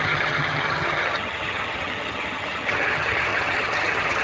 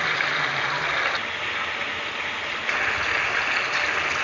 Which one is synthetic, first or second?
first